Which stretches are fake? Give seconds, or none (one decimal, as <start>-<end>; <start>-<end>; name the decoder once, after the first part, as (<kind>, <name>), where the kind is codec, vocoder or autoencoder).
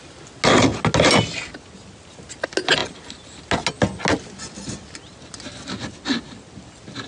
none